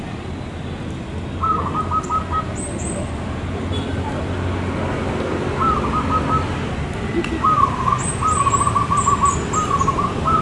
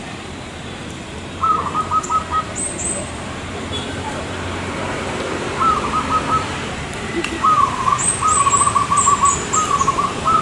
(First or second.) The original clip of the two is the first